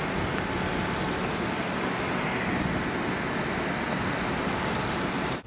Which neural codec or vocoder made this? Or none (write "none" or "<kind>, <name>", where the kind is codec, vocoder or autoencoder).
none